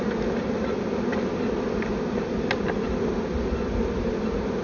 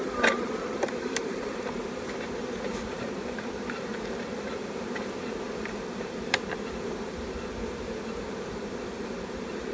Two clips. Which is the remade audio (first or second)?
second